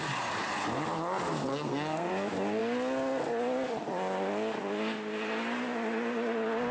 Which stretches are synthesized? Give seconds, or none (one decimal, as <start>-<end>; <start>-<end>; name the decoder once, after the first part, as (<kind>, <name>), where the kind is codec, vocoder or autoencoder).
1.5-2.1 (codec, SNAC)